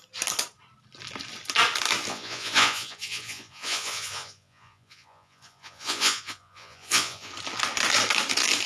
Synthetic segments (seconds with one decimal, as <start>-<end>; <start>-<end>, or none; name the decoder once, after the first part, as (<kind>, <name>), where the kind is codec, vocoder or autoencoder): 2.1-7.3 (vocoder, Vocos)